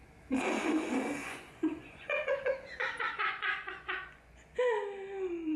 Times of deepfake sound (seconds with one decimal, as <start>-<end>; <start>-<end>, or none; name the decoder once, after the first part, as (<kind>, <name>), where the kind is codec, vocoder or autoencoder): 1.2-4.6 (vocoder, Vocos)